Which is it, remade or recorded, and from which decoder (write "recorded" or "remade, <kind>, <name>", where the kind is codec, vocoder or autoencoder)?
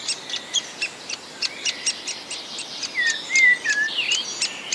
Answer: recorded